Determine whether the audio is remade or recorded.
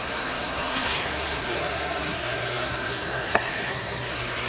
remade